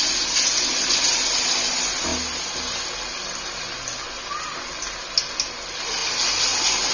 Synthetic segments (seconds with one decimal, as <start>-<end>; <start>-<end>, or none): none